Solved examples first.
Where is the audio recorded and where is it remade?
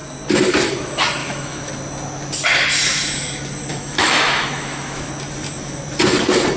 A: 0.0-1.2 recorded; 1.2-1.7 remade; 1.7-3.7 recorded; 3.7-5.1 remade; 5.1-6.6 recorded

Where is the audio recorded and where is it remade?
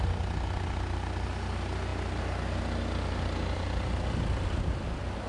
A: 0.0-5.3 recorded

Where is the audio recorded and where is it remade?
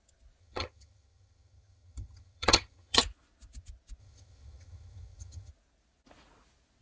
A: 0.0-0.4 recorded; 0.4-3.0 remade; 3.0-4.0 recorded; 4.0-5.5 remade; 5.5-6.8 recorded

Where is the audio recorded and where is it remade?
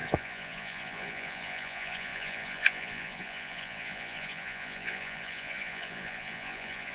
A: 0.0-6.9 remade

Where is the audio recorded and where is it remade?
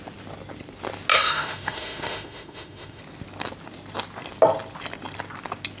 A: 0.0-1.1 recorded; 1.1-3.0 remade; 3.0-5.8 recorded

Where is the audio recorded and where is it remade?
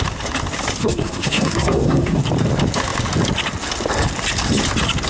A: 0.0-0.8 recorded; 0.8-2.2 remade; 2.2-5.1 recorded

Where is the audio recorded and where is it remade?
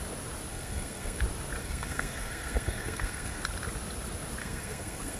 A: 0.0-0.5 recorded; 0.5-1.2 remade; 1.2-1.6 recorded; 1.6-3.4 remade; 3.4-4.4 recorded; 4.4-5.2 remade